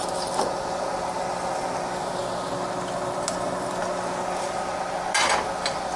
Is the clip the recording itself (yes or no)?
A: yes